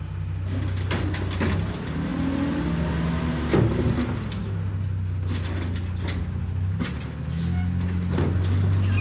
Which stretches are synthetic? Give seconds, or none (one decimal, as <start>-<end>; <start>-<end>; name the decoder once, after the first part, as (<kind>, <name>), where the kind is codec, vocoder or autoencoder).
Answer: none